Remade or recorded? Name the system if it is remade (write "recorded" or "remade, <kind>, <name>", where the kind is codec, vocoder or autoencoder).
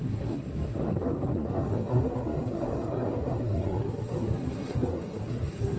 remade, codec, SNAC